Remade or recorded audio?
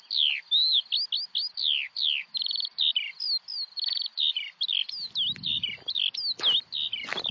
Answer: recorded